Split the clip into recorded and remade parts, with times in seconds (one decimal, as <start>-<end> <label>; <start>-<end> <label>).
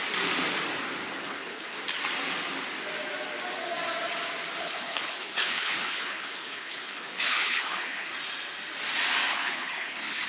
0.0-1.2 recorded; 1.2-1.8 remade; 1.8-4.6 recorded; 4.6-8.1 remade; 8.1-9.3 recorded; 9.3-10.3 remade